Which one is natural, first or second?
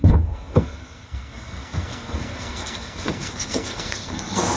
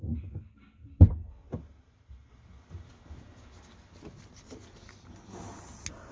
second